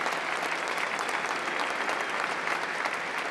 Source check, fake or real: real